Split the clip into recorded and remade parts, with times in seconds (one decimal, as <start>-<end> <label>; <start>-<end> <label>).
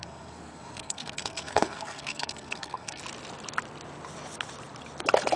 0.0-3.0 remade; 3.0-5.4 recorded